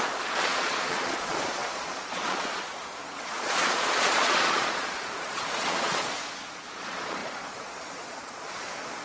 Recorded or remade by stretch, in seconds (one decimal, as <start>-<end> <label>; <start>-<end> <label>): 0.0-9.0 remade